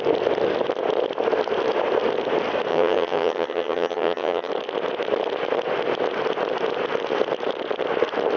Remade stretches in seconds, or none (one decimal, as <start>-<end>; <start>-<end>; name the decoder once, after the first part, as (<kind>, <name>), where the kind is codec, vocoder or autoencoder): 2.7-4.5 (vocoder, HiFi-GAN)